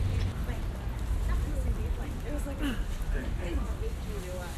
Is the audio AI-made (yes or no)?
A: no